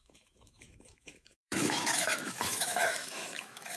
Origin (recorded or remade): remade